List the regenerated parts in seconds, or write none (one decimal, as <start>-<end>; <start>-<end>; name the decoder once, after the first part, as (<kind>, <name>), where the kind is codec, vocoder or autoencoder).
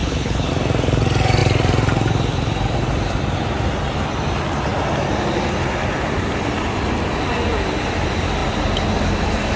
0.0-0.5 (codec, HILCodec)